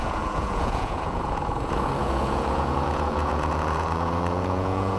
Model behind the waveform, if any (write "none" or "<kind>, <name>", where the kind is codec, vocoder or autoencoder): vocoder, Vocos